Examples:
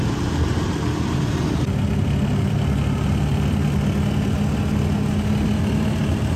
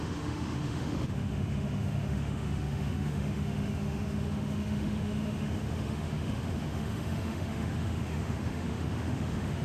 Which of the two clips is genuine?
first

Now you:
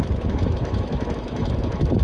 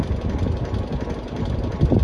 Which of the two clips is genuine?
second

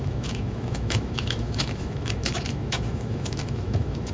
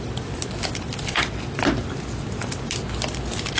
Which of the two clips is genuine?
second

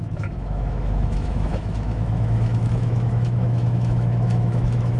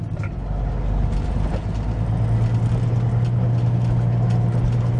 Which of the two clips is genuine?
second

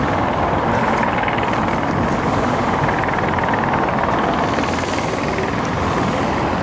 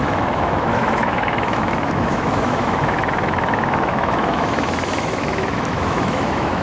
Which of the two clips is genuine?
first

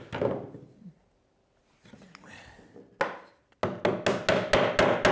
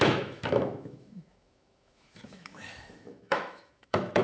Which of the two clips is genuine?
first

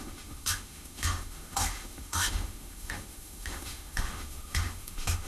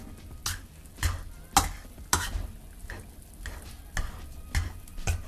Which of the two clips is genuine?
second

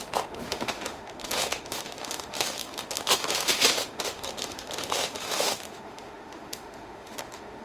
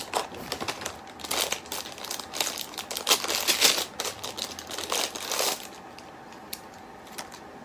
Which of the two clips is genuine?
second